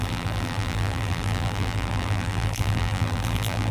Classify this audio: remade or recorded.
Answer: remade